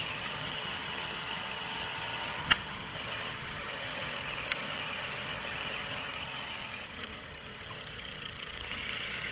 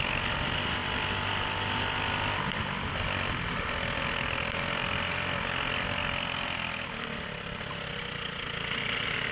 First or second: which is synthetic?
first